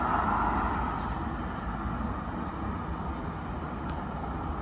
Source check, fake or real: real